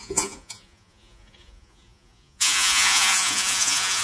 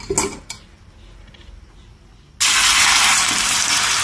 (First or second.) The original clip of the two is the second